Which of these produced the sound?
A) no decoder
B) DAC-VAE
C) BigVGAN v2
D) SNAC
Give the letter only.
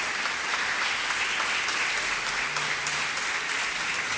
C